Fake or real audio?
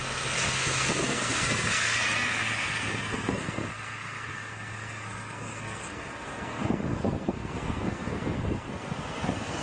fake